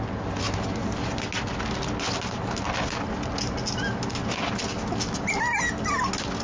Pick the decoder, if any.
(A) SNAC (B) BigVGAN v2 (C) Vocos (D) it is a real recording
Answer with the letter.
D